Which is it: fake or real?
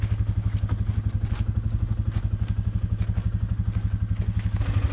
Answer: real